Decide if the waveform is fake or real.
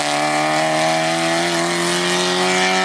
real